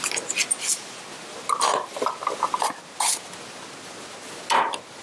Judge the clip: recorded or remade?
recorded